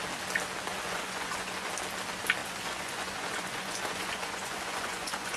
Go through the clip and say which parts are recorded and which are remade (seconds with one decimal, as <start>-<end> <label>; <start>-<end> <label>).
0.0-0.7 recorded; 0.7-1.7 remade; 1.7-2.4 recorded; 2.4-5.4 remade